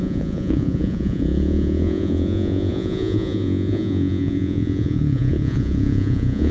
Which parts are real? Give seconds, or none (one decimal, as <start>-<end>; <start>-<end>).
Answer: none